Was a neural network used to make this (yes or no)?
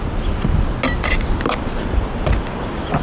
no